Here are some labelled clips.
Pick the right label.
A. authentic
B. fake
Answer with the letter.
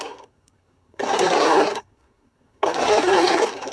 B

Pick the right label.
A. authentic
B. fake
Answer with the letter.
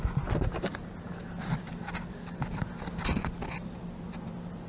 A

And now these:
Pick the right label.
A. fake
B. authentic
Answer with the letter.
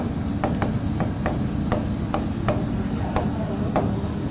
B